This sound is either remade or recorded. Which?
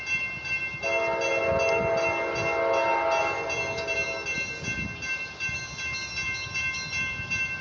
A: recorded